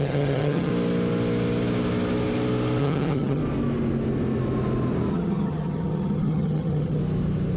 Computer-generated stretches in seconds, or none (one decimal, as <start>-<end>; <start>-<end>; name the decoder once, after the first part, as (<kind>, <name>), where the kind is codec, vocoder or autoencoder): 0.0-0.7 (vocoder, HiFi-GAN); 2.8-3.4; 5.1-7.0